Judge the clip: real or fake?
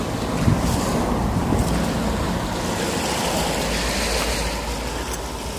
real